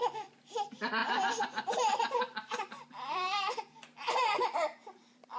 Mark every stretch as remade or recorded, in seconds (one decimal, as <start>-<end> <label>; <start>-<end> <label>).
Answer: 0.0-1.0 recorded; 1.0-3.6 remade; 3.6-4.8 recorded; 4.8-5.4 remade